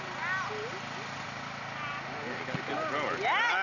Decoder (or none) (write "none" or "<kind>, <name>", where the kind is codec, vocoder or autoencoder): none